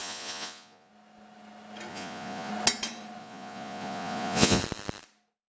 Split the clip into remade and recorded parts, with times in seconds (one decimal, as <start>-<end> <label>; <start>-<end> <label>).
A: 0.0-0.9 remade; 0.9-1.9 recorded; 1.9-2.5 remade; 2.5-3.2 recorded; 3.2-4.6 remade; 4.6-5.5 recorded